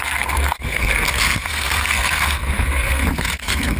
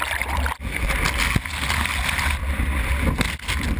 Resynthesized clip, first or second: first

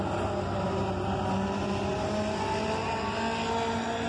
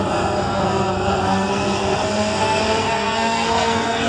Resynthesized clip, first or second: second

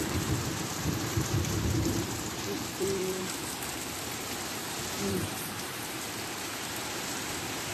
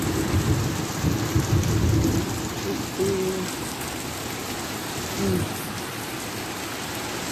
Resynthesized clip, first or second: first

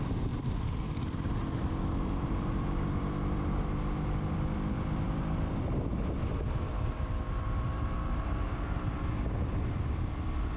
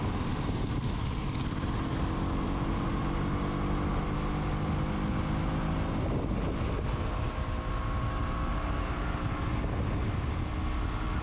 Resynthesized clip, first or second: first